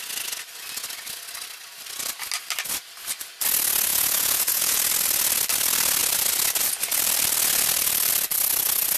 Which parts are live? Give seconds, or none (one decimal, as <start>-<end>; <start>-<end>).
0.0-3.9; 4.8-9.0